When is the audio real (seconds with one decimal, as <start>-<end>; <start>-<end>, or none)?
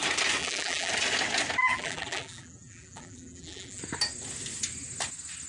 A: 0.0-0.4; 0.9-1.6; 3.8-5.5